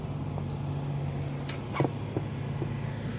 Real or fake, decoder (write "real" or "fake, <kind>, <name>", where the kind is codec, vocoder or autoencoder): real